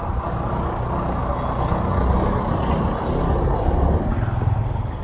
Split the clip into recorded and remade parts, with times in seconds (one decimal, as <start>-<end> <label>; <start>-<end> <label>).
0.0-5.0 recorded